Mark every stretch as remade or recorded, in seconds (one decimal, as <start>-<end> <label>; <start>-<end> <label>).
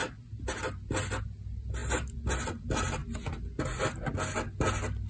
0.0-5.1 recorded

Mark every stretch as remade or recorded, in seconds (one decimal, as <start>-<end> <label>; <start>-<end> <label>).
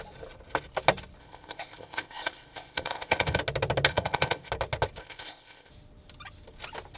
0.0-1.2 recorded; 1.2-3.4 remade; 3.4-3.9 recorded; 3.9-4.5 remade; 4.5-5.0 recorded; 5.0-5.7 remade; 5.7-7.0 recorded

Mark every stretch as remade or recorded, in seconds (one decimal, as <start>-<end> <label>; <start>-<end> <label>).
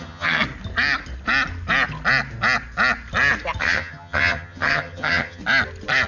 0.0-0.4 remade; 0.4-3.6 recorded; 3.6-5.4 remade; 5.4-6.1 recorded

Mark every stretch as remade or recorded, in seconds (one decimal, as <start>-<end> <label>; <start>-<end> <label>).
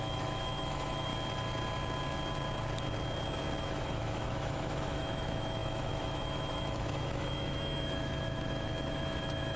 0.0-1.1 remade; 1.1-3.6 recorded; 3.6-9.6 remade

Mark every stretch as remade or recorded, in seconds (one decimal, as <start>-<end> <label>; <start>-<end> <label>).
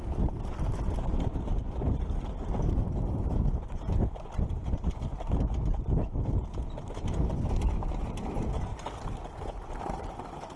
0.0-8.7 remade; 8.7-9.4 recorded; 9.4-10.6 remade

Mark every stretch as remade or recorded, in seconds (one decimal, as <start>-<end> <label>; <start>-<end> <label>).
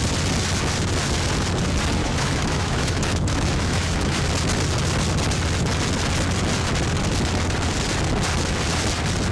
0.0-2.0 recorded; 2.0-4.2 remade; 4.2-9.3 recorded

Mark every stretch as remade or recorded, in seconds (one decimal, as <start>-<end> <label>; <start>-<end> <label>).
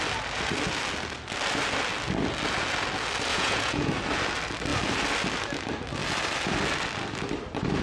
0.0-3.3 recorded; 3.3-3.9 remade; 3.9-7.8 recorded